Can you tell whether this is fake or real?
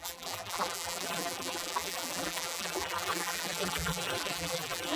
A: fake